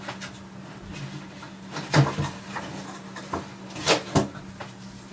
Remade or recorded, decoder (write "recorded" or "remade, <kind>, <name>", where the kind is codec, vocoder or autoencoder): recorded